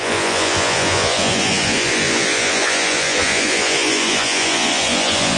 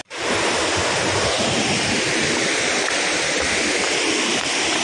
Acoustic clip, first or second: second